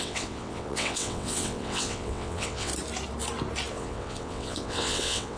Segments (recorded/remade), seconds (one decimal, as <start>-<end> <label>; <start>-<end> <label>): 0.0-2.7 remade; 2.7-3.7 recorded; 3.7-5.4 remade